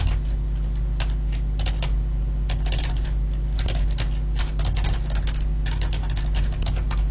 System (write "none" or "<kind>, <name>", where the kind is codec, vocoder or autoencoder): none